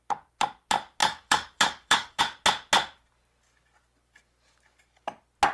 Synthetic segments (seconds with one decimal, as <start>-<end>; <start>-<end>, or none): 1.0-2.2